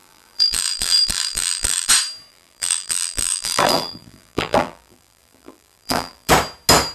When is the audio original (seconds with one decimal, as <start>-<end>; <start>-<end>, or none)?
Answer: 1.9-2.3; 6.3-6.9